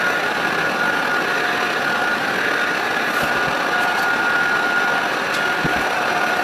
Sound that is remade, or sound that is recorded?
recorded